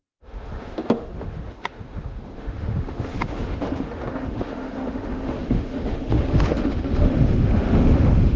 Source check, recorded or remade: remade